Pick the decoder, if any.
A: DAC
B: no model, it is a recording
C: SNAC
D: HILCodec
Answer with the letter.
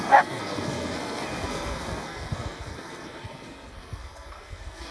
C